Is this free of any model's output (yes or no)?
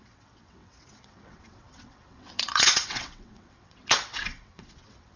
no